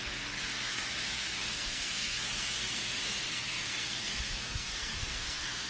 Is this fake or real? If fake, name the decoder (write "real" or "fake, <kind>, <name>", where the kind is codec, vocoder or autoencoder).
fake, codec, SNAC